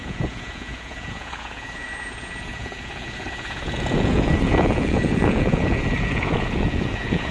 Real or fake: fake